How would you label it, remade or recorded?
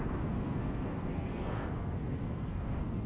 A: remade